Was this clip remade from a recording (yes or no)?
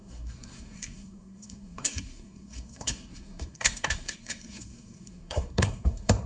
yes